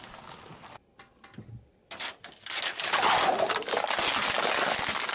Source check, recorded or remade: recorded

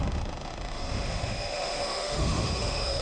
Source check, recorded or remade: remade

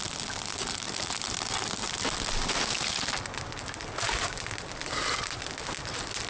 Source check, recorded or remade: recorded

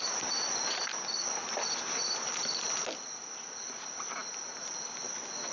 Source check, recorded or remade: recorded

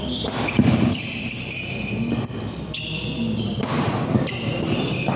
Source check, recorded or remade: recorded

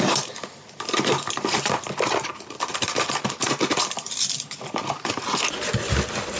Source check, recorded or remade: recorded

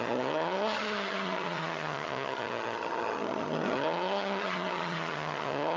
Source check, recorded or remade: remade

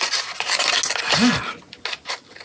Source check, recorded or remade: recorded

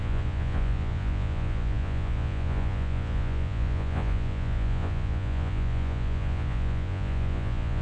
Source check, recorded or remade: remade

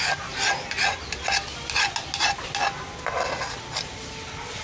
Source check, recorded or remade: recorded